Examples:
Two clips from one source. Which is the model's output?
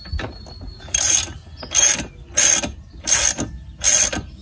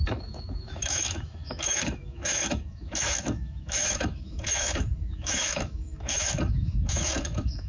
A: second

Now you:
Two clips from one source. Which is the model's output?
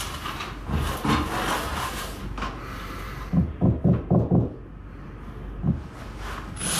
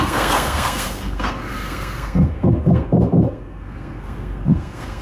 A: second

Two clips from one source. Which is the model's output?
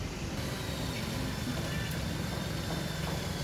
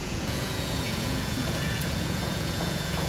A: second